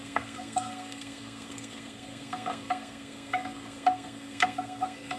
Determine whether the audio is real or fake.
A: fake